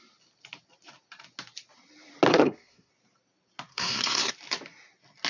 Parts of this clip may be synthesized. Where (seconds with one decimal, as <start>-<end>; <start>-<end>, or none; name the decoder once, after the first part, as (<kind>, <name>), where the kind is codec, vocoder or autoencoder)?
2.3-2.9 (codec, SNAC); 3.7-4.3